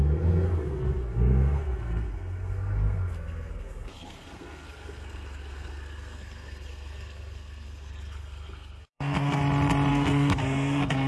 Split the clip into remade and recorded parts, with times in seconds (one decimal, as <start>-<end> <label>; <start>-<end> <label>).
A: 0.0-9.4 remade; 9.4-9.9 recorded; 9.9-11.1 remade